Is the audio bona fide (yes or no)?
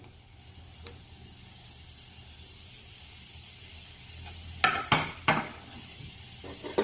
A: yes